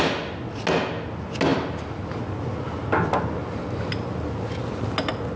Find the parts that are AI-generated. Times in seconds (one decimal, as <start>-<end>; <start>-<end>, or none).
none